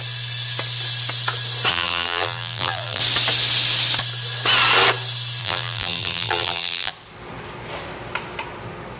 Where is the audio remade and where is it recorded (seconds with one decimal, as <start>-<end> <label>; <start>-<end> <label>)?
0.0-1.7 recorded; 1.7-3.0 remade; 3.0-5.4 recorded; 5.4-6.9 remade; 6.9-9.0 recorded